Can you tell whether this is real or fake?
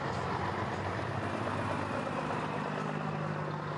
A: real